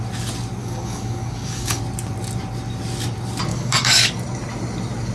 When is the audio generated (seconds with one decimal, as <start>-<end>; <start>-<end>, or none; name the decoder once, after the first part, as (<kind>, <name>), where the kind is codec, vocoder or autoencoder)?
0.6-1.8 (codec, DAC); 3.5-4.1